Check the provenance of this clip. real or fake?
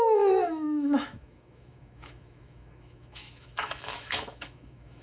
fake